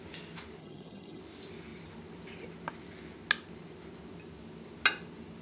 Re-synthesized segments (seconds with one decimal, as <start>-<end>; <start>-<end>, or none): 0.6-1.2